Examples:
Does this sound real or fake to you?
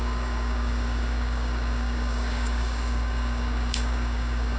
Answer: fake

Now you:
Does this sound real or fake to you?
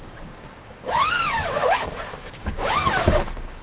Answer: fake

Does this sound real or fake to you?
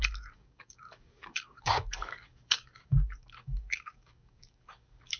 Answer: fake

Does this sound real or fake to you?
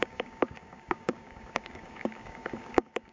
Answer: fake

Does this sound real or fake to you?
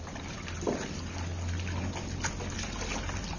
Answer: real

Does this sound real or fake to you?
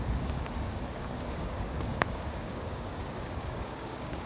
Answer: fake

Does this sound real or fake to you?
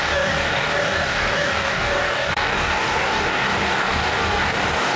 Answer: fake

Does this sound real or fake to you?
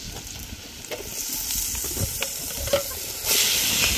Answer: real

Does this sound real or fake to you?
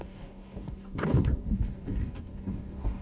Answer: fake